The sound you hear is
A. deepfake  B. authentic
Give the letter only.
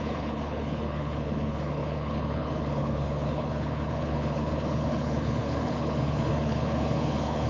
A